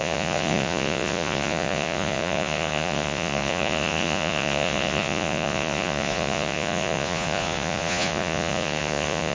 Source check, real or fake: fake